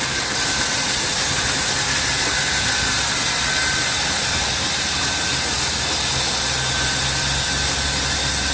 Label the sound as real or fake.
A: real